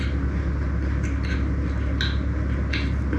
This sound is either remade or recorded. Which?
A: recorded